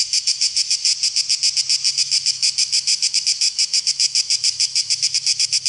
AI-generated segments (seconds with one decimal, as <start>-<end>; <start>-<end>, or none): 0.0-0.9; 1.9-5.7